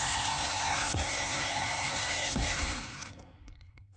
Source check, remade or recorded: remade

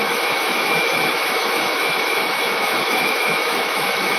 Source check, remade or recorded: remade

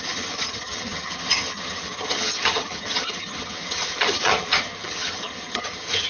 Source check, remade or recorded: remade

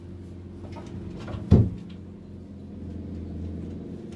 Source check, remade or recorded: recorded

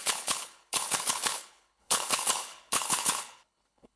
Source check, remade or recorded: remade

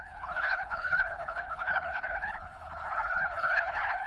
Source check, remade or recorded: remade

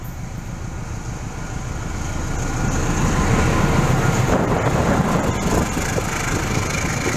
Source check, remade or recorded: recorded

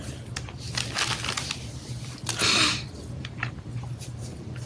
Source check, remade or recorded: recorded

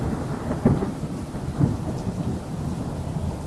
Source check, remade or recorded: recorded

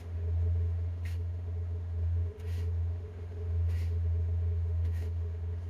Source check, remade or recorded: remade